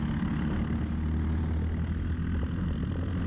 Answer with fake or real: real